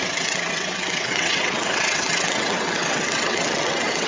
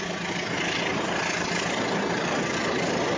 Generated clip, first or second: first